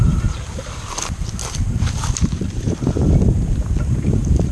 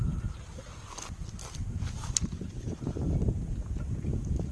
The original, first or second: second